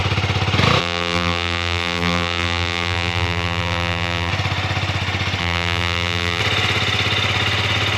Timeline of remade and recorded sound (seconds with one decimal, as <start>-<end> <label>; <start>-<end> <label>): 0.0-0.8 recorded; 0.8-4.3 remade; 4.3-5.4 recorded; 5.4-6.4 remade; 6.4-8.0 recorded